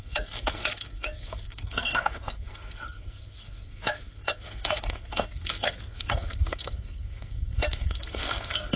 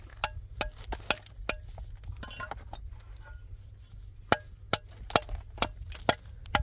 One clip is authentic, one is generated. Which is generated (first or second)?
first